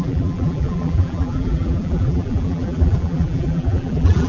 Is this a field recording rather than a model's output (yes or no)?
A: no